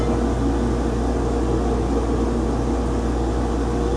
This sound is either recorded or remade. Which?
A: recorded